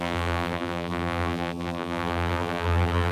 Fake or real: fake